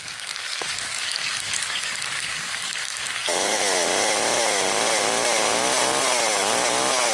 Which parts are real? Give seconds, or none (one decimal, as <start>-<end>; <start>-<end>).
3.6-7.1